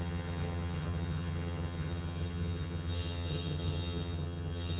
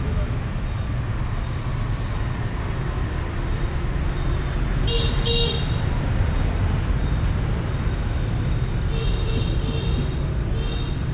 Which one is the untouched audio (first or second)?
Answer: second